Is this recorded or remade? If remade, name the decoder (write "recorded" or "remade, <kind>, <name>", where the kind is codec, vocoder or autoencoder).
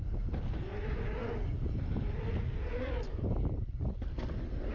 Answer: recorded